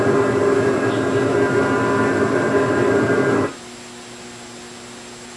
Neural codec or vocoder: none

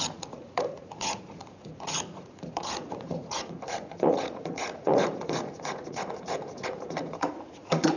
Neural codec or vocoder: vocoder, Vocos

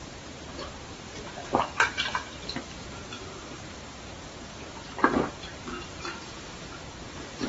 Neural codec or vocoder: vocoder, BigVGAN v2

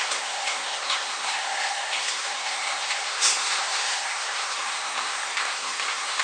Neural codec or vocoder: codec, SNAC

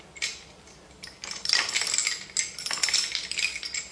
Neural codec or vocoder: none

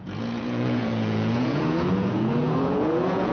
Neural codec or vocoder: vocoder, Vocos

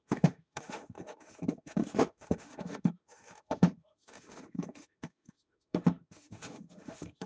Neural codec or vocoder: autoencoder, DAC-VAE